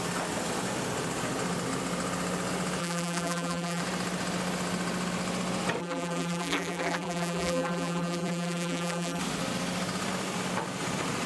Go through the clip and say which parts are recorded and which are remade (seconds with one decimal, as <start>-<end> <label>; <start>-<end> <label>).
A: 0.0-2.8 recorded; 2.8-3.8 remade; 3.8-5.8 recorded; 5.8-9.2 remade; 9.2-11.3 recorded